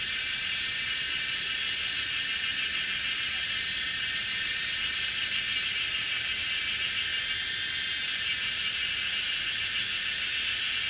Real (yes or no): yes